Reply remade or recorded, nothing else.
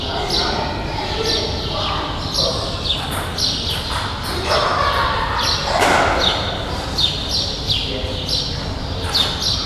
recorded